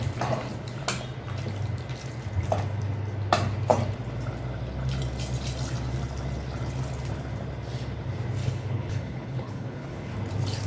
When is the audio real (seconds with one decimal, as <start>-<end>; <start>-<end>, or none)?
0.0-8.4; 10.1-10.7